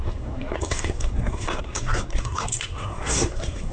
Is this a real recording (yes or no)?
no